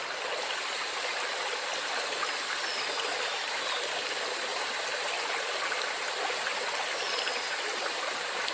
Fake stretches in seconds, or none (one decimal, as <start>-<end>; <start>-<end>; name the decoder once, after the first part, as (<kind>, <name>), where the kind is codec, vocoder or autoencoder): 3.1-3.7 (vocoder, BigVGAN v2); 7.3-8.0